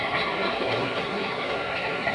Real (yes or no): no